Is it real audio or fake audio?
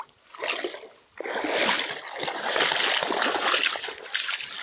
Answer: real